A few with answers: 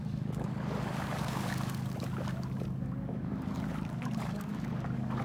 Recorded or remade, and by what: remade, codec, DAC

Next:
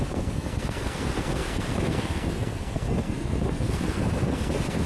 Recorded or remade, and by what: remade, codec, SNAC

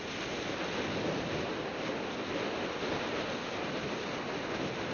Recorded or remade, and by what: recorded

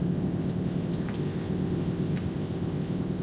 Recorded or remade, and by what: remade, codec, ZipCodec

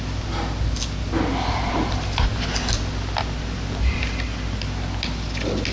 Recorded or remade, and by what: recorded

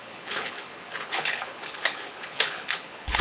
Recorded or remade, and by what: remade, codec, HILCodec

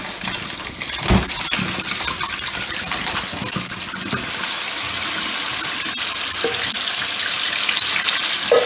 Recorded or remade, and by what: recorded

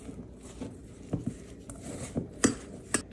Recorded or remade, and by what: recorded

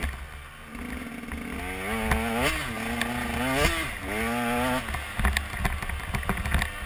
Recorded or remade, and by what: recorded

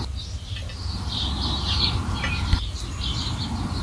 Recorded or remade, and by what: recorded